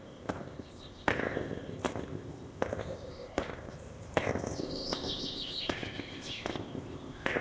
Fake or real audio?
fake